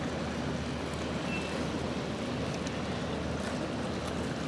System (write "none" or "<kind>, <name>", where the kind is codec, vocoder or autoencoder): none